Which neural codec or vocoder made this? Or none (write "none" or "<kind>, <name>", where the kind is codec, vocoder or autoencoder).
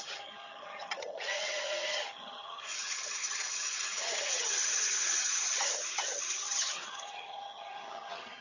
vocoder, HiFi-GAN